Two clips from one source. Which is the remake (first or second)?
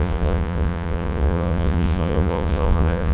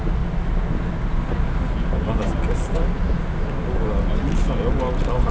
first